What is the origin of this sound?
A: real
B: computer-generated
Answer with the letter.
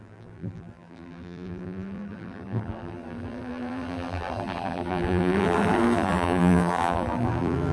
B